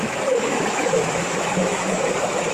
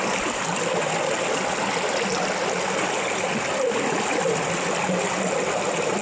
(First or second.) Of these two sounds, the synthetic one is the first